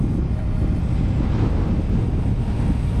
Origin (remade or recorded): recorded